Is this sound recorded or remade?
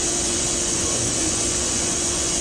remade